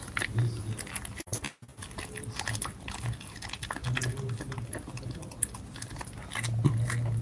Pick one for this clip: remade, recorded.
recorded